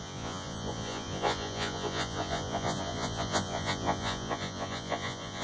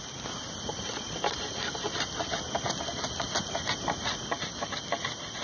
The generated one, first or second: first